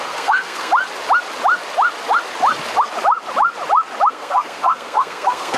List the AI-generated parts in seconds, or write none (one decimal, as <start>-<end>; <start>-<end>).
0.0-0.7; 4.1-5.6